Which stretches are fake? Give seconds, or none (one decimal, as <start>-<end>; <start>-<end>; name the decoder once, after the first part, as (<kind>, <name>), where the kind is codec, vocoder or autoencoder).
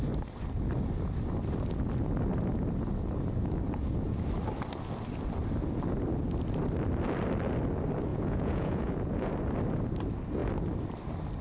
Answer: 8.1-9.3 (vocoder, Vocos)